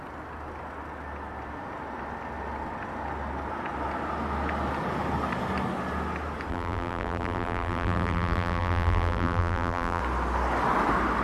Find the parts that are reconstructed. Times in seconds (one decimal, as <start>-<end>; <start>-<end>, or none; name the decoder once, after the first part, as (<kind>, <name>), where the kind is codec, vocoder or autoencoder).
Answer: 6.5-10.0 (vocoder, BigVGAN v2)